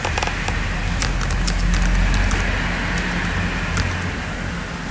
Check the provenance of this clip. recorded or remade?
recorded